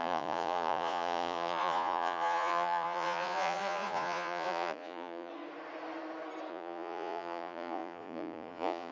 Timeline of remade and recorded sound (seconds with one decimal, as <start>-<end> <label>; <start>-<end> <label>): 0.0-5.3 remade; 5.3-6.5 recorded; 6.5-8.9 remade